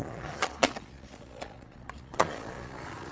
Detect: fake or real fake